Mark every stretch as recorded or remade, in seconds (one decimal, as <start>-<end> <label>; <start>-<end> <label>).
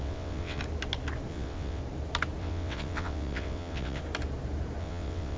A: 0.0-0.6 remade; 0.6-1.3 recorded; 1.3-1.8 remade; 1.8-2.4 recorded; 2.4-4.0 remade; 4.0-4.8 recorded; 4.8-5.4 remade